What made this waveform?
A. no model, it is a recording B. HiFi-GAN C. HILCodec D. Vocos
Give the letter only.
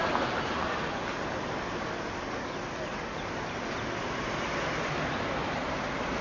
A